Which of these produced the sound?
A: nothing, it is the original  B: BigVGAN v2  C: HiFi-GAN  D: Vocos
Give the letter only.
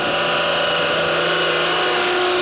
A